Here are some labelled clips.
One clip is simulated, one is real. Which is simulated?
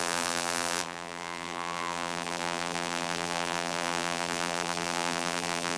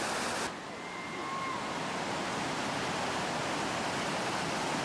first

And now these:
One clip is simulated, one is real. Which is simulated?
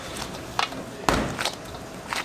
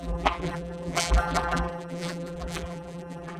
second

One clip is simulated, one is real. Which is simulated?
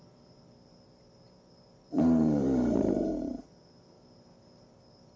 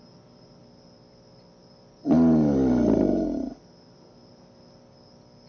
first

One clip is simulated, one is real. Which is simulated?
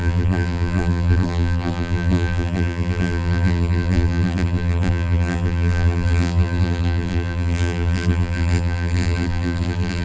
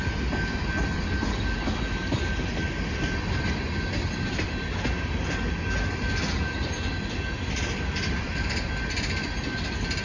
first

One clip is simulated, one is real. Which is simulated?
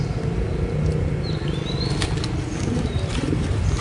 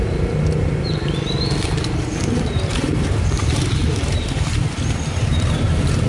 second